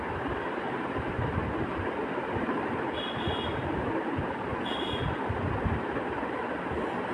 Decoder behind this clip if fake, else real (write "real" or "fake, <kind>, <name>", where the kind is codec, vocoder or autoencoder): real